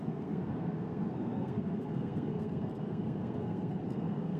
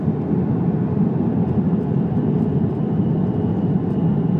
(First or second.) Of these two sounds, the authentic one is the second